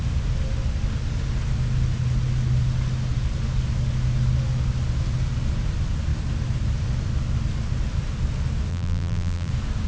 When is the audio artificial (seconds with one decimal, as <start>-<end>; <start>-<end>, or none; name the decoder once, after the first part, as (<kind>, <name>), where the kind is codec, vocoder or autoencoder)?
8.7-9.5 (vocoder, BigVGAN v2)